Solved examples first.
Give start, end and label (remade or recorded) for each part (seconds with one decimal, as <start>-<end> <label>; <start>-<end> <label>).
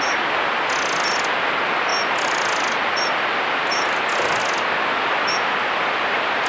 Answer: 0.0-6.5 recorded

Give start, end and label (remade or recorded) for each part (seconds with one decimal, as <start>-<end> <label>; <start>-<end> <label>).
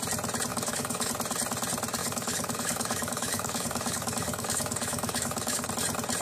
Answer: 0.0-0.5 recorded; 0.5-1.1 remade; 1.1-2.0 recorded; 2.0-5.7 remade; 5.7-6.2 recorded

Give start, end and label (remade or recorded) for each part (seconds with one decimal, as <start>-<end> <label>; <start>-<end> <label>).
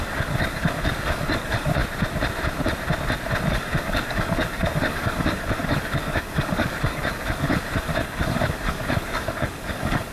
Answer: 0.0-1.8 remade; 1.8-3.5 recorded; 3.5-10.1 remade